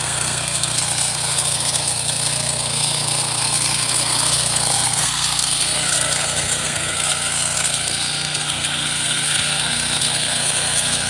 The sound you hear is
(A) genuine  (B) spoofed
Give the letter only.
B